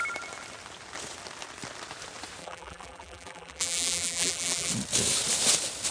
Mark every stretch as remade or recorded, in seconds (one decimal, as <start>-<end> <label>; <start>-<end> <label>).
0.0-2.4 recorded; 2.4-4.7 remade; 4.7-5.9 recorded